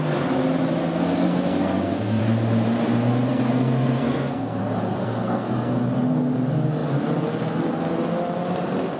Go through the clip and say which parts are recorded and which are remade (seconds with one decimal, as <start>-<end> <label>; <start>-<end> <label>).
0.0-0.8 recorded; 0.8-2.2 remade; 2.2-3.3 recorded; 3.3-4.6 remade; 4.6-5.0 recorded; 5.0-5.8 remade; 5.8-9.0 recorded